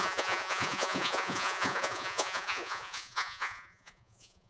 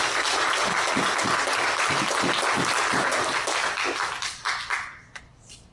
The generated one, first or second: first